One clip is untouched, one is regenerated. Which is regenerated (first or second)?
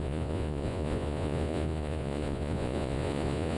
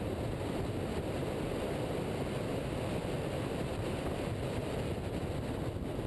first